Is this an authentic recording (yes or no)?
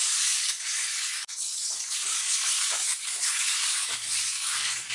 no